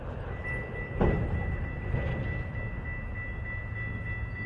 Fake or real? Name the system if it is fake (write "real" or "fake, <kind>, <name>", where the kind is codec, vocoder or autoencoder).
real